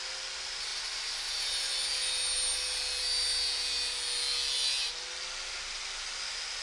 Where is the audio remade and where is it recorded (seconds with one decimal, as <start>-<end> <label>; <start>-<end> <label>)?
0.0-6.6 recorded